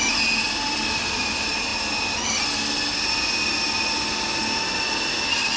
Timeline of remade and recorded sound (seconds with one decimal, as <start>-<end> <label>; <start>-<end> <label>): 0.0-5.6 recorded